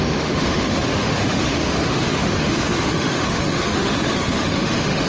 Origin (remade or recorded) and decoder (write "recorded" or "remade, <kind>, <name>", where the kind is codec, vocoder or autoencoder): remade, autoencoder, DAC-VAE